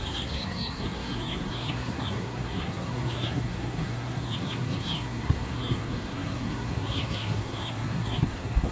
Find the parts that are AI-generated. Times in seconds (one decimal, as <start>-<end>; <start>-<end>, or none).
0.0-8.7